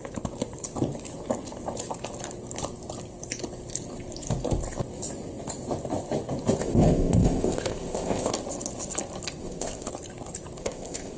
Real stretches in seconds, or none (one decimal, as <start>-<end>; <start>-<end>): 0.0-6.6; 8.3-9.4; 9.9-10.6